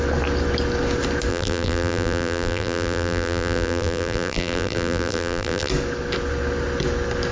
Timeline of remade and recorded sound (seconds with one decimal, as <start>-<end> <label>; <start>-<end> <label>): 0.0-1.3 recorded; 1.3-5.7 remade; 5.7-7.3 recorded